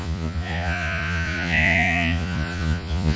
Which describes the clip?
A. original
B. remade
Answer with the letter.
B